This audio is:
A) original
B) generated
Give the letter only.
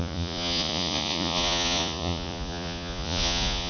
B